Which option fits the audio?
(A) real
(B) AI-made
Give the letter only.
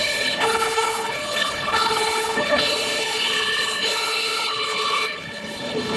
B